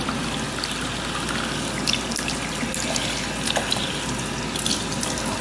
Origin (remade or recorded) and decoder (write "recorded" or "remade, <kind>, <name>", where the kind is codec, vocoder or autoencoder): recorded